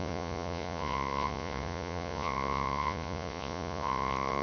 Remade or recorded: remade